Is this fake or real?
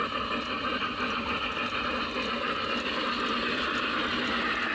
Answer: real